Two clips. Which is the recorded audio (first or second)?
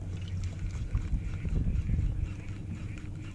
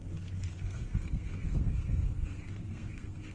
first